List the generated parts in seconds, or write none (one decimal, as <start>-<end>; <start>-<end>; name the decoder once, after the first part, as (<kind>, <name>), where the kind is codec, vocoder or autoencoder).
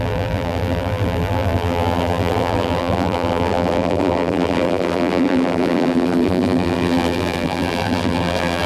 0.0-8.7 (vocoder, BigVGAN v2)